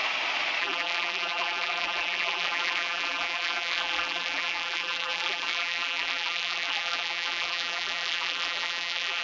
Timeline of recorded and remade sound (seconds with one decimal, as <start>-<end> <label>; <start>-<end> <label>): 0.0-0.6 recorded; 0.6-9.2 remade